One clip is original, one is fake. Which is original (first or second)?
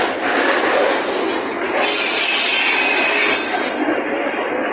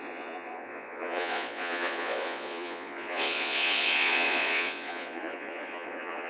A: first